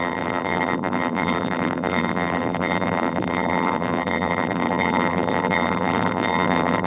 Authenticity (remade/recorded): remade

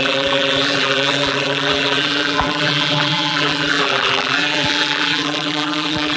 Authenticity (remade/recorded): remade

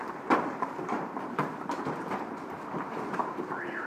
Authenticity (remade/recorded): remade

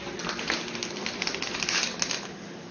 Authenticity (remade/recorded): recorded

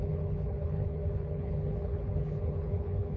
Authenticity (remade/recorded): remade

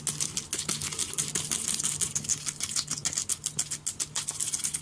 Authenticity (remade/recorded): recorded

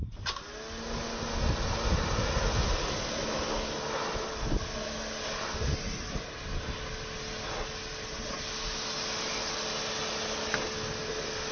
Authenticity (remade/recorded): recorded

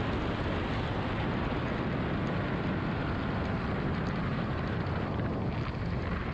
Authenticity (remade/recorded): recorded